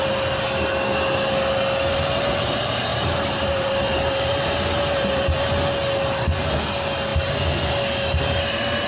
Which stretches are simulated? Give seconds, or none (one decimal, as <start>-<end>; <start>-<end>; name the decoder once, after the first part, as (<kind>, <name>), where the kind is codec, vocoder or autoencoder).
2.9-5.5 (vocoder, BigVGAN v2)